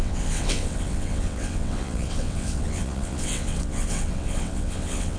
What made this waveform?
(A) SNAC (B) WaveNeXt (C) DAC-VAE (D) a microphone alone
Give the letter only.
B